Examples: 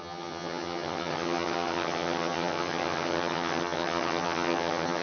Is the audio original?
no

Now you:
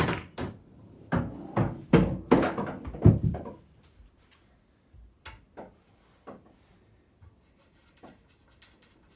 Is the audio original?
yes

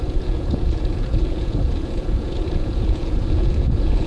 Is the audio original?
no